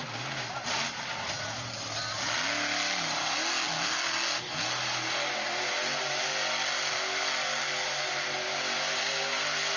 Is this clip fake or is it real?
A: real